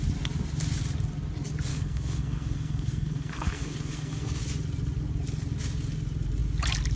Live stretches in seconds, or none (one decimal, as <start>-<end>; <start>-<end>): 0.0-1.7; 4.4-7.0